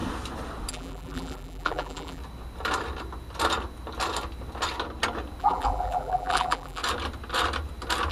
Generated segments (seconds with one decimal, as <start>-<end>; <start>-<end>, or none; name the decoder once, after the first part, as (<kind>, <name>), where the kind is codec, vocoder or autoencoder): 0.7-2.2 (vocoder, BigVGAN v2); 5.4-6.8